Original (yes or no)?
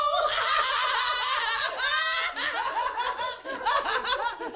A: yes